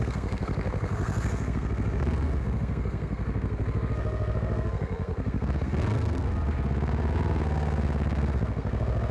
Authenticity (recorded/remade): remade